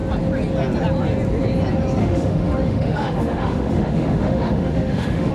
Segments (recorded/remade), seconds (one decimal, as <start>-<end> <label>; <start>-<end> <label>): 0.0-2.0 recorded; 2.0-5.3 remade